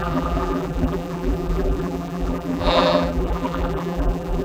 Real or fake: fake